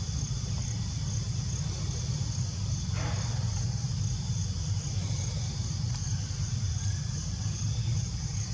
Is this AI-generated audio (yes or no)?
no